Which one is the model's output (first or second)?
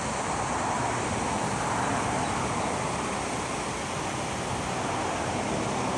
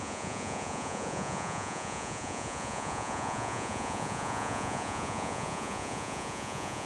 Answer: second